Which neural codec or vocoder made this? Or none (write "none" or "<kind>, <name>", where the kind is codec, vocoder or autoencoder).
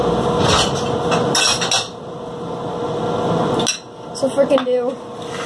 none